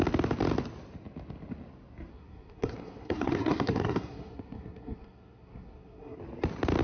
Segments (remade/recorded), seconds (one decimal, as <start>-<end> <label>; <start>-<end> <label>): 0.0-2.1 recorded; 2.1-6.2 remade; 6.2-6.8 recorded